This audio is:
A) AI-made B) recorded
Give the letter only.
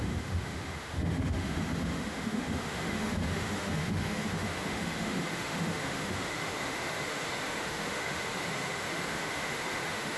A